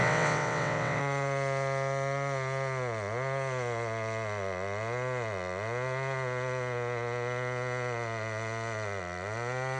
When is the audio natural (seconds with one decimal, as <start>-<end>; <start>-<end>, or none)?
1.0-9.8